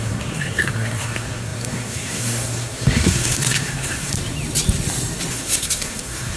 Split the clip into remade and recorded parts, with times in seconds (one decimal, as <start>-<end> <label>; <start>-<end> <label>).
0.0-4.1 remade; 4.1-5.3 recorded; 5.3-6.4 remade